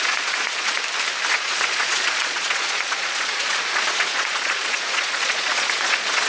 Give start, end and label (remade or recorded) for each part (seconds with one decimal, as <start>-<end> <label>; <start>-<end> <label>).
0.0-0.8 remade; 0.8-1.3 recorded; 1.3-6.3 remade